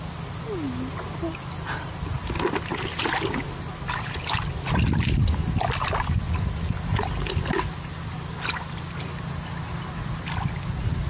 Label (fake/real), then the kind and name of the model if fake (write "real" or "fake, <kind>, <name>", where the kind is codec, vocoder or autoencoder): real